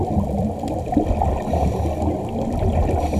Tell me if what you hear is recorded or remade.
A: recorded